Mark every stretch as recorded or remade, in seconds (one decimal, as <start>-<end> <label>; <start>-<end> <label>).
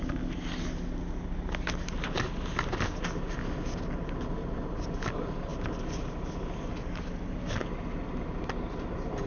0.0-7.6 recorded; 7.6-8.3 remade; 8.3-9.3 recorded